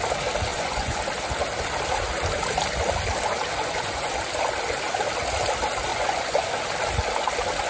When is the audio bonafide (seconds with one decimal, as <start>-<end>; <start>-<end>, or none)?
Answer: 0.0-0.5; 1.0-3.5; 4.1-5.9; 6.6-7.7